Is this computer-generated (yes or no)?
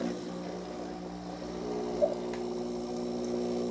no